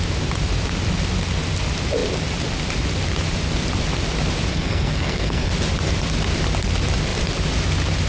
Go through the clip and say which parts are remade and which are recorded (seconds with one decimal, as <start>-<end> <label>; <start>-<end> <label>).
0.0-4.5 recorded; 4.5-5.5 remade; 5.5-8.1 recorded